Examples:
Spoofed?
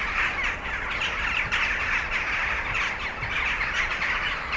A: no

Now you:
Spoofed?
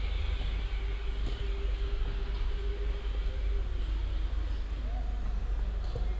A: no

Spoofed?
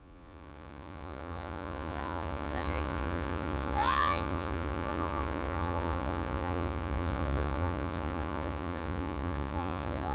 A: yes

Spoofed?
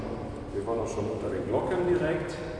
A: no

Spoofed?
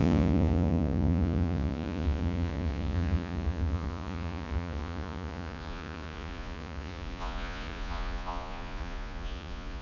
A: yes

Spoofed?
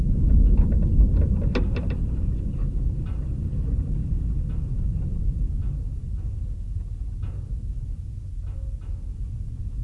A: no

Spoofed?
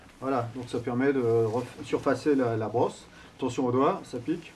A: no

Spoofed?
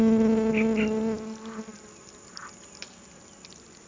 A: no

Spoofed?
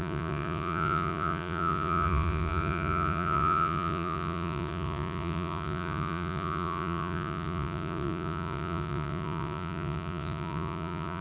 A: yes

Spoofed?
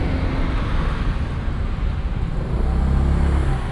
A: no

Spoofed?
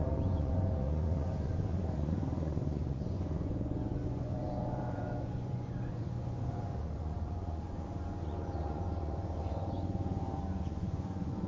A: yes